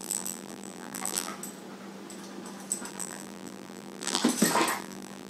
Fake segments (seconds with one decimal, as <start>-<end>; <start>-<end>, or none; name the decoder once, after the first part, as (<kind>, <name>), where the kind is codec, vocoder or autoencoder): 0.0-1.3 (vocoder, BigVGAN v2); 2.9-4.2; 4.8-5.3